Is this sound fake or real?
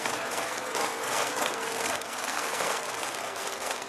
fake